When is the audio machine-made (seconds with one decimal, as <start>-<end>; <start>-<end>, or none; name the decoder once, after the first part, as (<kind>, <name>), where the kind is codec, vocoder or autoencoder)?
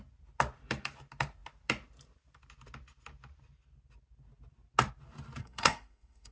5.4-6.3 (codec, SNAC)